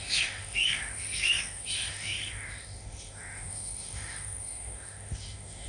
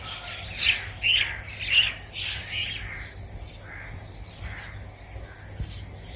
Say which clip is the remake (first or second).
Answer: first